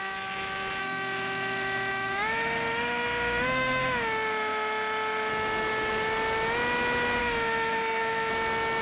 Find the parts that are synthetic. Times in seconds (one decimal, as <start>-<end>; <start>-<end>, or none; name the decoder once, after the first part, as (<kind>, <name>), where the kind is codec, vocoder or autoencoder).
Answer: 0.8-5.3 (autoencoder, DAC-VAE); 7.2-8.3

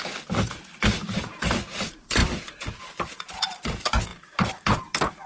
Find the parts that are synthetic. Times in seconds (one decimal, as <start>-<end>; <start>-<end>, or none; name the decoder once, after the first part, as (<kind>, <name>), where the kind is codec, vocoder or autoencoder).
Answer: none